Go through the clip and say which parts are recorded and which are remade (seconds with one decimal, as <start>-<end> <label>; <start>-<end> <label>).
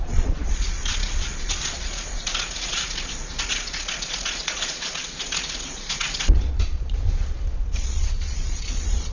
0.0-9.1 remade